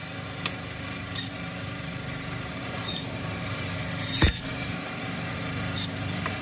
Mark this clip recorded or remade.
remade